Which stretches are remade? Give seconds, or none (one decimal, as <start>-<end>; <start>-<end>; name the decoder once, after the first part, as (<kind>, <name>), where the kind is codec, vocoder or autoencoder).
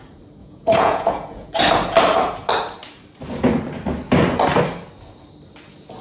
0.4-1.6 (vocoder, Vocos)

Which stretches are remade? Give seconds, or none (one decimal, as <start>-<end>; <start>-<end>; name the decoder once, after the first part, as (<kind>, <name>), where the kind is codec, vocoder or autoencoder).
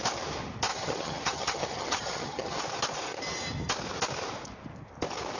0.7-2.6 (vocoder, HiFi-GAN)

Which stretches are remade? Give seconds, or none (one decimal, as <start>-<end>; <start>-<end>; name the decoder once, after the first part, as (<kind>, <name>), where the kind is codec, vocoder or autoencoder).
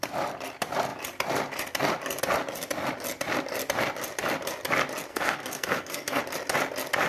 5.1-6.2 (codec, SNAC)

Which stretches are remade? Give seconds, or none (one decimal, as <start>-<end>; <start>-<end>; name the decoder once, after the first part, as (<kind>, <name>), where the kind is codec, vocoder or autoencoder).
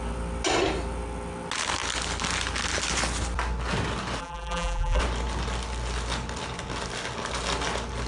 4.2-5.0 (vocoder, BigVGAN v2)